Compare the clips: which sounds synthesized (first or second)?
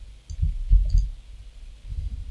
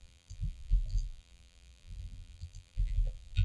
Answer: second